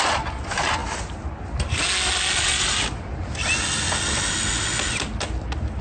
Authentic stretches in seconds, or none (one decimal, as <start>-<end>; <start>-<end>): 0.0-5.8